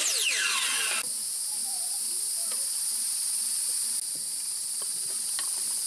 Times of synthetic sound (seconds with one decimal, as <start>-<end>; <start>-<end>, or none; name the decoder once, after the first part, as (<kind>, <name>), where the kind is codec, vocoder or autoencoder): none